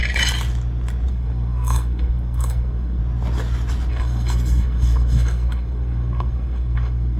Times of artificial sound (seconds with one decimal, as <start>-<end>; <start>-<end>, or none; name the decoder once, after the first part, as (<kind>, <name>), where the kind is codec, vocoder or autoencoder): 1.1-3.0 (codec, SNAC); 3.9-7.2